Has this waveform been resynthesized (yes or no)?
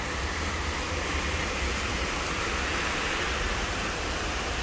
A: yes